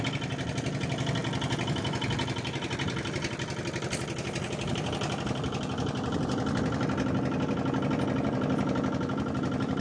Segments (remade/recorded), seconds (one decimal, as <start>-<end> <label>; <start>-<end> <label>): 0.0-9.8 recorded